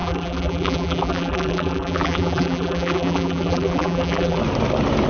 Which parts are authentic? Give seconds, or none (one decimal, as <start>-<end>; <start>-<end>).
4.4-5.1